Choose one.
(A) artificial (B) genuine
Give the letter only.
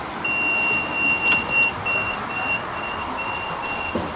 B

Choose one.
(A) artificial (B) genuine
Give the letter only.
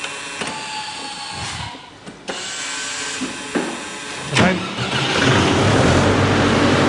B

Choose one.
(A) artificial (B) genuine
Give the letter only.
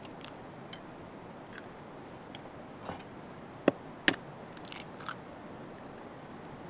B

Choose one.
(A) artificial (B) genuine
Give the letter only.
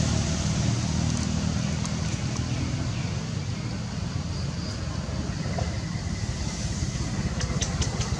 B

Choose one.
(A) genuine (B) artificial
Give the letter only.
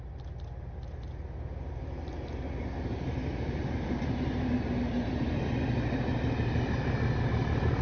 A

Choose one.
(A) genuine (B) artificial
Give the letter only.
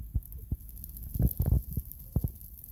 A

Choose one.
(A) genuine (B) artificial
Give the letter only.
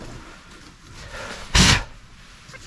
A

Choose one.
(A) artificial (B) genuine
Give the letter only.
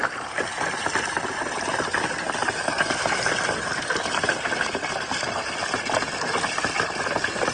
B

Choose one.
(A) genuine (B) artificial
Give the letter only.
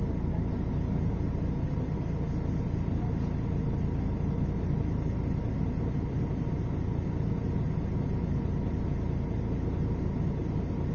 A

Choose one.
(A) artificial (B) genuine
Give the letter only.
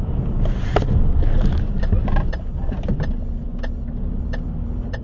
B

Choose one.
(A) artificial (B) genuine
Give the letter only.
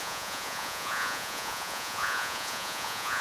A